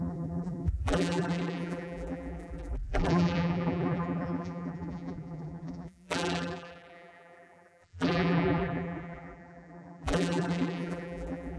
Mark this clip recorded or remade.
remade